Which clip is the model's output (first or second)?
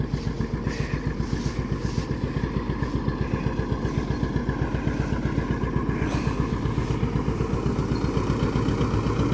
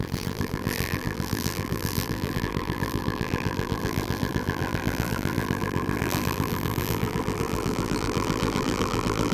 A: second